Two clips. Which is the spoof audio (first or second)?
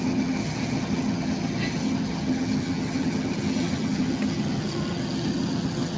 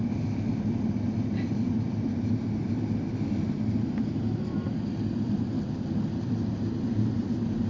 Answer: first